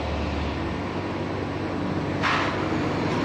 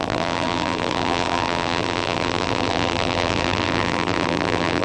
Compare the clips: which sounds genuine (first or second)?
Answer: first